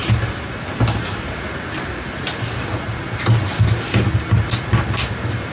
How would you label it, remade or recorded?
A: recorded